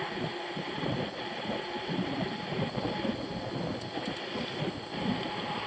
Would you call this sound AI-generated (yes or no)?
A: no